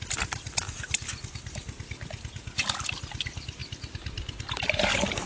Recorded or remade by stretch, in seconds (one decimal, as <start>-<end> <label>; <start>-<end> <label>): 0.0-5.3 recorded